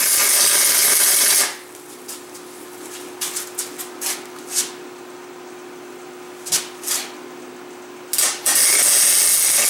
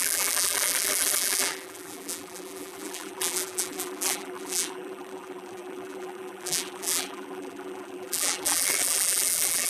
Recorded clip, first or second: first